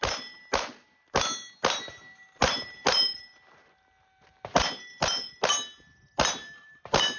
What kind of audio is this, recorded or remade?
recorded